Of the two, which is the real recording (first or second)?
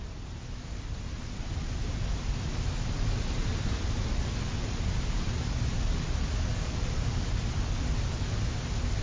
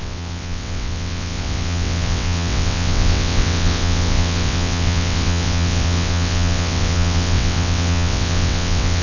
first